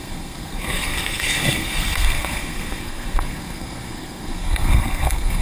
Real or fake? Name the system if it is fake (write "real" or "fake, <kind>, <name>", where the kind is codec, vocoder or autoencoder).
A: fake, codec, SNAC